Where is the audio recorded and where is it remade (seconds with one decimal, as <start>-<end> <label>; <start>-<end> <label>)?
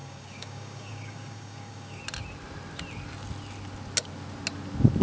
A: 0.0-2.0 remade; 2.0-5.0 recorded